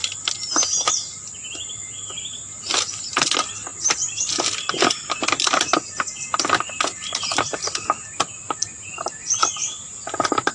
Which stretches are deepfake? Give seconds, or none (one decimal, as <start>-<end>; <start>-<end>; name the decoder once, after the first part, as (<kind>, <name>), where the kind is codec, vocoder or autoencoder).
none